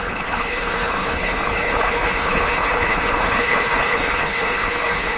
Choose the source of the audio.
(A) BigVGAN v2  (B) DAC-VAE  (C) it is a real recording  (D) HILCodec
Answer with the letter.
D